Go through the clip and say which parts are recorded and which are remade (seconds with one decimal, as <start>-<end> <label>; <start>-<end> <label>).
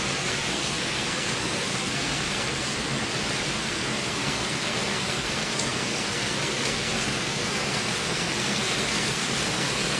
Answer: 0.0-3.1 remade; 3.1-3.6 recorded; 3.6-10.0 remade